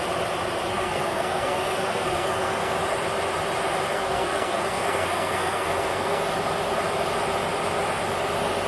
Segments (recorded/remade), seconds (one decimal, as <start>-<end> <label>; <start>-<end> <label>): 0.0-0.7 recorded; 0.7-2.7 remade; 2.7-3.9 recorded; 3.9-6.2 remade; 6.2-8.7 recorded